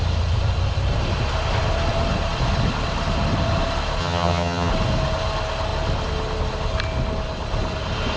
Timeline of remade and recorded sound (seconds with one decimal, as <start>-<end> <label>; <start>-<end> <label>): 0.0-4.0 recorded; 4.0-4.7 remade; 4.7-8.2 recorded